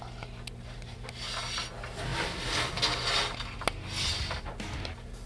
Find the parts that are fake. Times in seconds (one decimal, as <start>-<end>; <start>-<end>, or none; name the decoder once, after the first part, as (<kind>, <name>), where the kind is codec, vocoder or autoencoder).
none